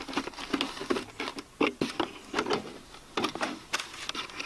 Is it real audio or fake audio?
real